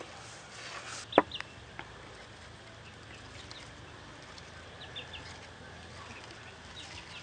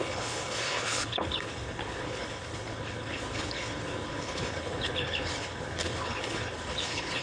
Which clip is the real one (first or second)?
first